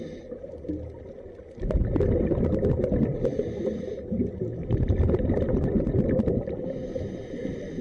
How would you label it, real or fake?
real